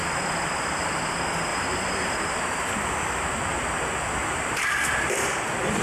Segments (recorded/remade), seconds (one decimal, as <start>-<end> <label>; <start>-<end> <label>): 0.0-1.1 remade; 1.1-1.5 recorded; 1.5-2.7 remade; 2.7-4.2 recorded; 4.2-4.8 remade; 4.8-5.8 recorded